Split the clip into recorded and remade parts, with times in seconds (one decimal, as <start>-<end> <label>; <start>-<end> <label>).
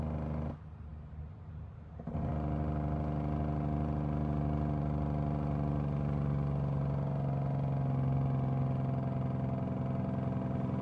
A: 0.0-10.8 recorded